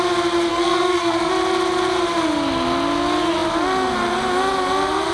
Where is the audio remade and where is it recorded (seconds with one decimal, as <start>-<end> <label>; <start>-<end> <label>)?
0.0-0.5 recorded; 0.5-1.3 remade; 1.3-5.1 recorded